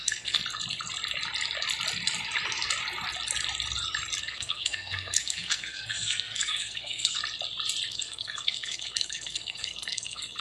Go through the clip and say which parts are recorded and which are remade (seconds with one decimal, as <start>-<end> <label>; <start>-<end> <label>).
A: 0.0-0.4 remade; 0.4-4.2 recorded; 4.2-7.2 remade; 7.2-7.9 recorded; 7.9-10.4 remade